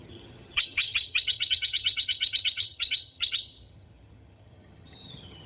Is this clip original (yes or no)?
no